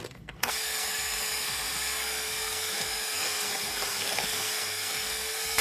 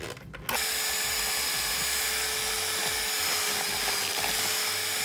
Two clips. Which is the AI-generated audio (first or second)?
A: first